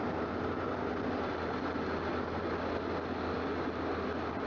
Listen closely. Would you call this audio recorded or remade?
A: recorded